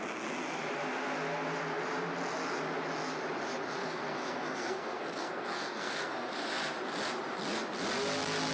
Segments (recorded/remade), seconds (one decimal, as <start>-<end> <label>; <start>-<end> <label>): 0.0-3.8 recorded; 3.8-6.3 remade; 6.3-8.5 recorded